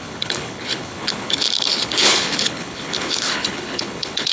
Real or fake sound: fake